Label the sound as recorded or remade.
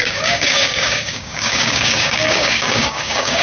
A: remade